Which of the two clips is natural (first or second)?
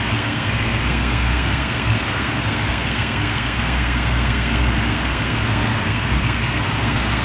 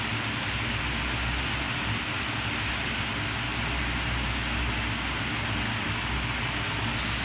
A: second